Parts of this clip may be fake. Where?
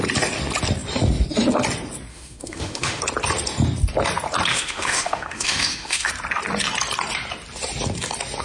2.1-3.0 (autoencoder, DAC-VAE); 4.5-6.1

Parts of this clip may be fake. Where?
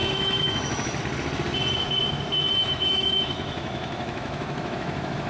0.0-1.0 (autoencoder, DAC-VAE); 2.6-5.3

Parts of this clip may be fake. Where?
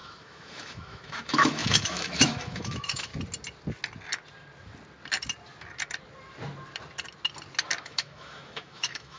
0.0-3.1 (autoencoder, DAC-VAE); 7.8-9.2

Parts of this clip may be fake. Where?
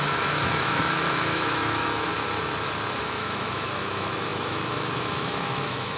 0.0-2.1 (autoencoder, DAC-VAE); 3.0-6.0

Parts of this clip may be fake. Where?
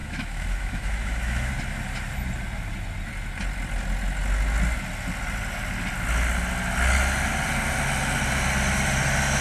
0.0-1.5 (autoencoder, DAC-VAE)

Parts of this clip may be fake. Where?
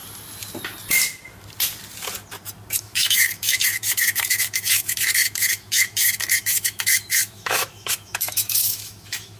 2.7-9.4 (autoencoder, DAC-VAE)